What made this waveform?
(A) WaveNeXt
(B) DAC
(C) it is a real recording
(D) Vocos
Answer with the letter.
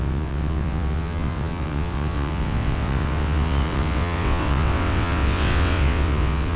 A